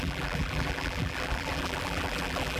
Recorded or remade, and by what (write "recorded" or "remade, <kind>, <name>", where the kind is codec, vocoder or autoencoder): remade, vocoder, BigVGAN v2